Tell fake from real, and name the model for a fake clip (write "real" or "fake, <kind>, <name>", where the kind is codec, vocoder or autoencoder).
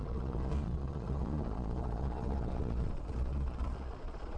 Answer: fake, vocoder, Vocos